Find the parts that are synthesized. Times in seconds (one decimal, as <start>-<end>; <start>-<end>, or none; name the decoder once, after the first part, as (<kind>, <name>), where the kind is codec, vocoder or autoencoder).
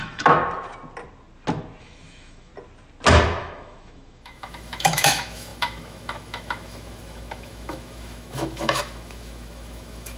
0.0-0.4 (autoencoder, DAC-VAE); 1.8-2.5; 3.4-10.2